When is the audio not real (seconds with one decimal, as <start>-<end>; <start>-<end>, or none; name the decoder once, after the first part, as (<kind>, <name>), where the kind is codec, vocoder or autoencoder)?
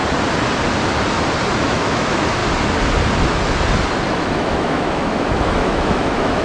1.6-2.4 (autoencoder, DAC-VAE); 4.1-6.4